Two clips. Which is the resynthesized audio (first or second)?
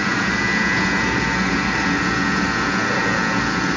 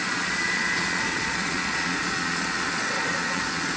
second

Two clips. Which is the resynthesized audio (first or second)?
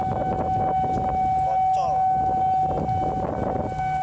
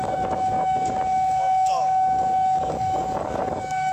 second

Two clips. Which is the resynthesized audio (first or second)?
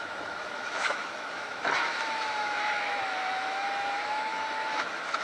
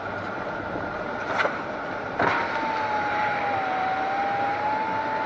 first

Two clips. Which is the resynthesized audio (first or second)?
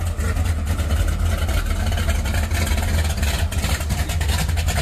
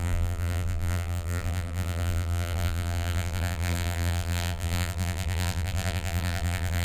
second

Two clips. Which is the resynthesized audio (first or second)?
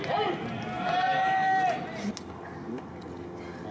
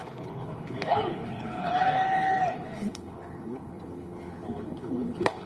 second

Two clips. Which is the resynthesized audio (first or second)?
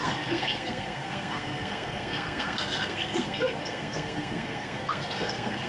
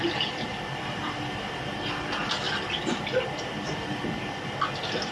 first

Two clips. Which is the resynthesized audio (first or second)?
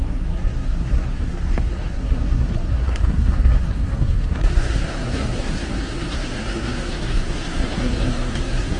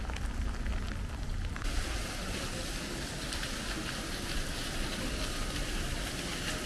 first